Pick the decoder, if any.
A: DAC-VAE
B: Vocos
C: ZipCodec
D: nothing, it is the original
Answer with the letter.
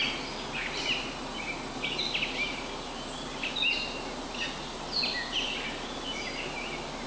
D